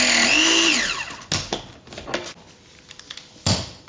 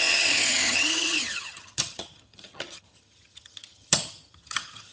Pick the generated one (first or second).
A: second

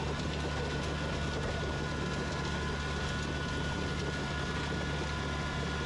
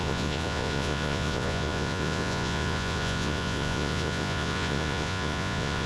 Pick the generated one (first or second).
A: second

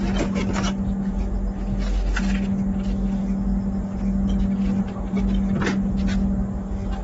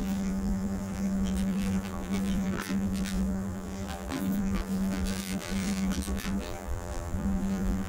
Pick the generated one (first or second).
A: second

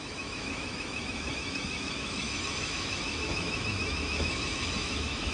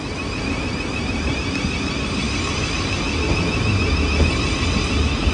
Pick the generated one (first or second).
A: first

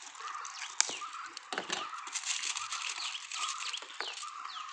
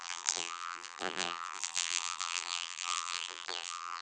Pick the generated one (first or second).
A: second